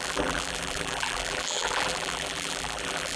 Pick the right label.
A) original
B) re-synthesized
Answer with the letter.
B